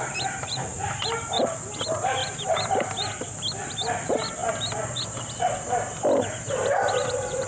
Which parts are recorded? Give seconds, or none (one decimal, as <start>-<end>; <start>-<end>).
0.0-2.2; 2.7-7.5